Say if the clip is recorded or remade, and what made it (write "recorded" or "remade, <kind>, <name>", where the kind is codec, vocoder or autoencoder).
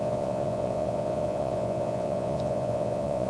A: remade, vocoder, Vocos